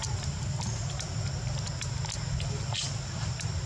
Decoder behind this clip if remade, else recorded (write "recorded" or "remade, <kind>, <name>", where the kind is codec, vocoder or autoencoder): recorded